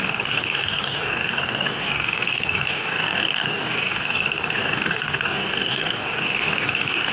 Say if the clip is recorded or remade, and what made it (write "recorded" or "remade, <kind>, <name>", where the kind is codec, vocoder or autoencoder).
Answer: remade, codec, DAC